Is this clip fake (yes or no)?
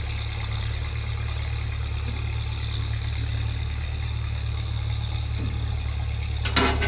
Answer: no